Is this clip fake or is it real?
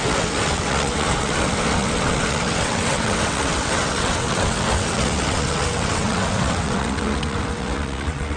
fake